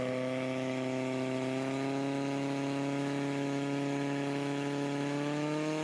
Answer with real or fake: fake